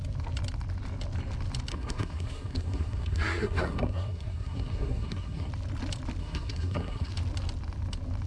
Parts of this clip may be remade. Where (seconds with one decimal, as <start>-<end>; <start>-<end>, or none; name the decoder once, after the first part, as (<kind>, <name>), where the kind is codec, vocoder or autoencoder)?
1.7-5.5 (codec, SNAC); 6.2-7.1